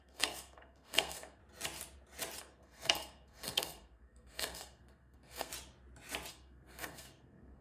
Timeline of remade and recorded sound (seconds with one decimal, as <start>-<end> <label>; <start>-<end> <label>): 0.0-1.4 remade; 1.4-2.4 recorded; 2.4-5.5 remade; 5.5-6.3 recorded; 6.3-7.6 remade